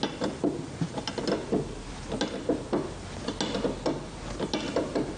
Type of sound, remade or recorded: recorded